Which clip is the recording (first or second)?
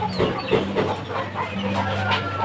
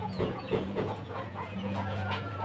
first